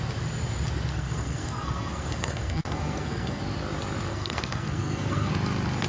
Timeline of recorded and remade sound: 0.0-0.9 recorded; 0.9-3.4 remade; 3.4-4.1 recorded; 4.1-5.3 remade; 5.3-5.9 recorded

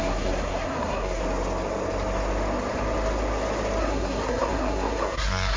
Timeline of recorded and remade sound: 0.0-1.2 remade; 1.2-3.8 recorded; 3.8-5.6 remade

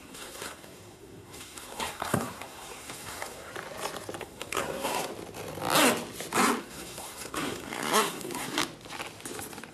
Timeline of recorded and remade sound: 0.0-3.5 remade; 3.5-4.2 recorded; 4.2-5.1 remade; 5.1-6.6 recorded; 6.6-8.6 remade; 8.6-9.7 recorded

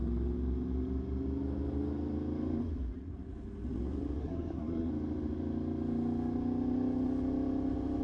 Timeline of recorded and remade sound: 0.0-4.2 recorded; 4.2-4.9 remade; 4.9-8.0 recorded

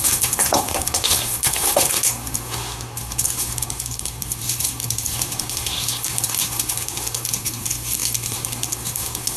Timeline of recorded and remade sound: 0.0-9.4 remade

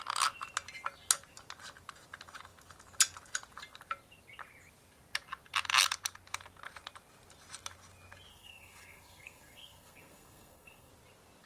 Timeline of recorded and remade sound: 0.0-8.3 recorded; 8.3-10.9 remade; 10.9-11.5 recorded

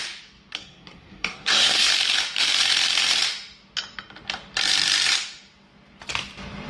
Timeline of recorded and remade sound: 0.0-0.6 recorded; 0.6-1.9 remade; 1.9-6.7 recorded

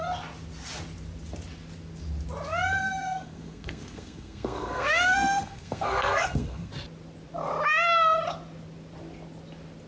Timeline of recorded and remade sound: 0.0-2.8 recorded; 2.8-6.7 remade; 6.7-9.9 recorded